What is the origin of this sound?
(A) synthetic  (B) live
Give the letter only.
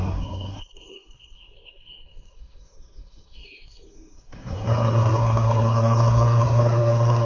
A